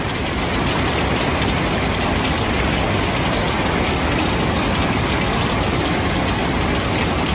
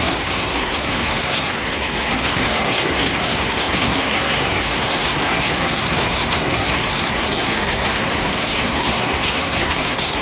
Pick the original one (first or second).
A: first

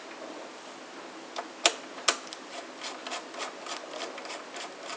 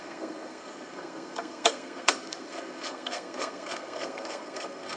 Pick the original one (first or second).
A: first